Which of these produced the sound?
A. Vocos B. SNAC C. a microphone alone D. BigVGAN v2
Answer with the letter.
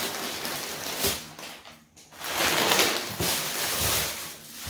D